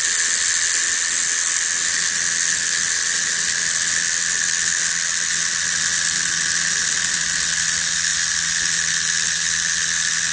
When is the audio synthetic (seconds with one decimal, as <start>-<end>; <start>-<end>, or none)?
none